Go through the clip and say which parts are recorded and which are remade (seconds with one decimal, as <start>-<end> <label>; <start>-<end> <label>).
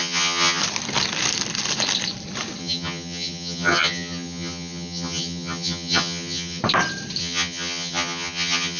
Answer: 0.0-0.6 remade; 0.6-2.6 recorded; 2.6-6.6 remade; 6.6-7.2 recorded; 7.2-8.8 remade